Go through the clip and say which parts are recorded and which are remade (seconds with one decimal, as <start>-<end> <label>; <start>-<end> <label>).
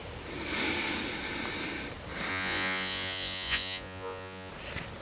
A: 0.0-2.3 recorded; 2.3-4.5 remade; 4.5-5.0 recorded